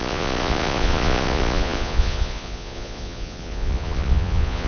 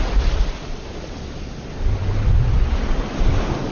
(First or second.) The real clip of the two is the second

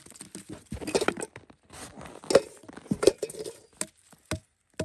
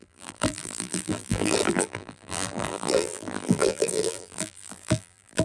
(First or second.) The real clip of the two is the first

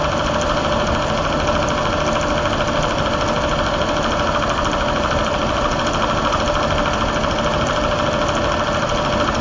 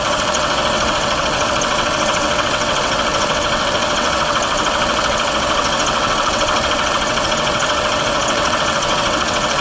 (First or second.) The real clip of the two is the first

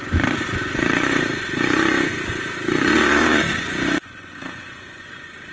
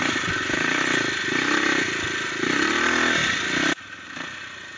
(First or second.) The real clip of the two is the second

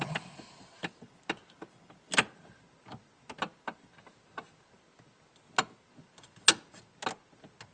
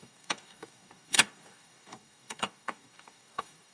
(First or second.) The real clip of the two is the first